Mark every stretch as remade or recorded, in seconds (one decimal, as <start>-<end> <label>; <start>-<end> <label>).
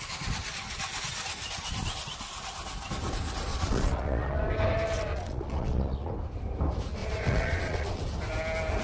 0.0-3.5 recorded; 3.5-4.4 remade; 4.4-5.1 recorded; 5.1-6.1 remade; 6.1-7.0 recorded; 7.0-8.0 remade; 8.0-8.8 recorded